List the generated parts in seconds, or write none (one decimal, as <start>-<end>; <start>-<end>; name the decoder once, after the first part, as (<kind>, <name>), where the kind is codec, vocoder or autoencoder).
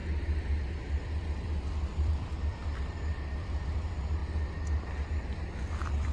0.9-4.2 (vocoder, BigVGAN v2); 5.6-6.1